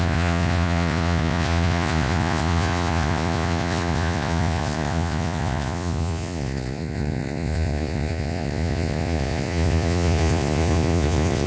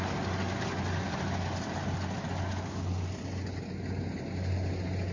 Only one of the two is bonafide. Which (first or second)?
second